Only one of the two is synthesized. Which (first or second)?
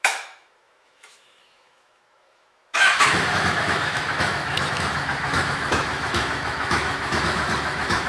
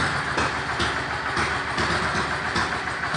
first